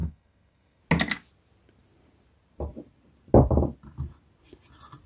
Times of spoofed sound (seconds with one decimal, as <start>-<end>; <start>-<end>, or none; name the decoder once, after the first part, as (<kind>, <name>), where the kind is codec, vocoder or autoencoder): 0.0-0.8 (codec, SNAC)